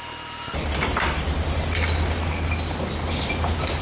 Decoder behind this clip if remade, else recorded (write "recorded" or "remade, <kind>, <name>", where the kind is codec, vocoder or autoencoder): recorded